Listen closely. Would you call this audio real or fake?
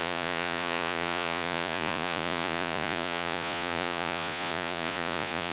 fake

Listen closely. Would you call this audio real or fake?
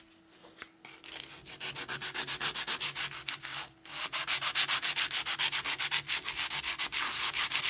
real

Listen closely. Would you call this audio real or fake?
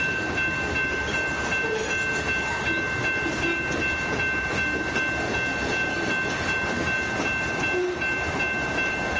real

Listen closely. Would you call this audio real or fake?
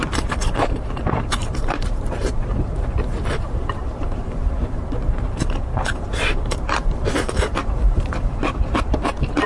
fake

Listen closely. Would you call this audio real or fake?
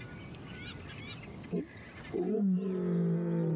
real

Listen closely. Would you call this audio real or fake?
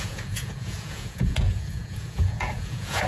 fake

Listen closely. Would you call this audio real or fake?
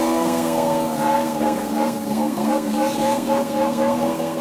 fake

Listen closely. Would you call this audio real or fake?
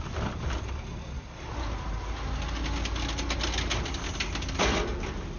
real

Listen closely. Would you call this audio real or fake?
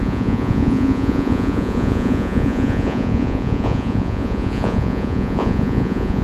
fake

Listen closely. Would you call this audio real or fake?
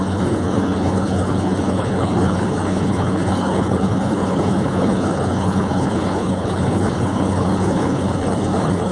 fake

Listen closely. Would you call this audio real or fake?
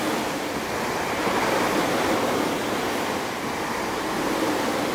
real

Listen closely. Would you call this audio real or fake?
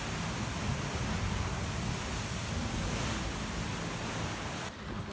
real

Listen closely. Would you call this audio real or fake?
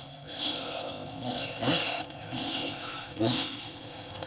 fake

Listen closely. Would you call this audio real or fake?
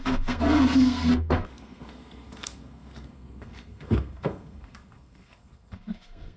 fake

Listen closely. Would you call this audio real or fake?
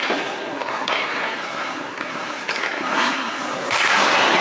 fake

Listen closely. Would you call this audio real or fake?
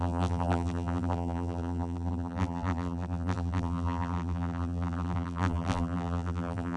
fake